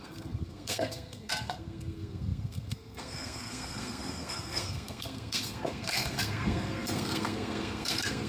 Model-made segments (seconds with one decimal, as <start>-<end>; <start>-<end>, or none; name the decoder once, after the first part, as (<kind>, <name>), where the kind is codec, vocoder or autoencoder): 0.0-8.3 (codec, SNAC)